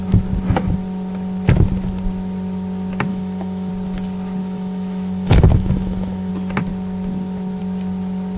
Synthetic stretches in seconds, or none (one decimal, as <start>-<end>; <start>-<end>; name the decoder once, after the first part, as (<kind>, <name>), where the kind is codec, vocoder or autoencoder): 3.1-3.7 (autoencoder, DAC-VAE); 4.4-6.3